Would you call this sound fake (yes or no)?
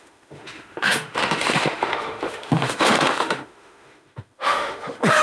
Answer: yes